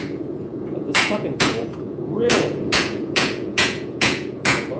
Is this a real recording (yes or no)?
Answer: no